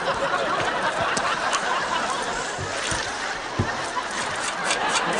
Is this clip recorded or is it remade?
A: recorded